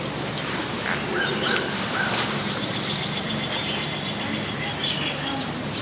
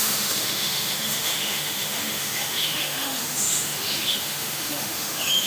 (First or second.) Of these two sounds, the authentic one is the first